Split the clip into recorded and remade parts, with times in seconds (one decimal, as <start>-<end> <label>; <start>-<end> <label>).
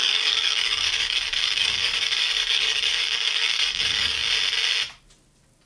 0.0-4.2 remade; 4.2-5.7 recorded